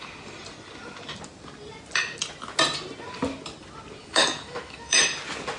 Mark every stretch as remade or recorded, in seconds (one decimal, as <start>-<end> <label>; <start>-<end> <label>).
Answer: 0.0-4.0 recorded; 4.0-5.0 remade; 5.0-5.6 recorded